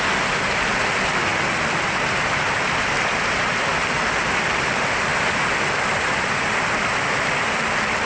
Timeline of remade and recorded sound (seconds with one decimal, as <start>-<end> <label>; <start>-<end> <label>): 0.0-8.1 recorded